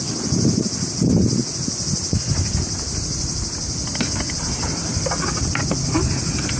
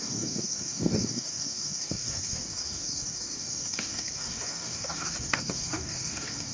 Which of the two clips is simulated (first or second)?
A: second